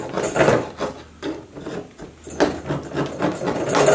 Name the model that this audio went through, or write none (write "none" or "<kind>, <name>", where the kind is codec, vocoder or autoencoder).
none